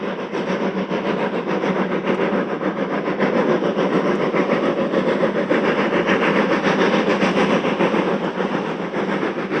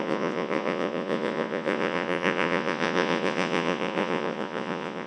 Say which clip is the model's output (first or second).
second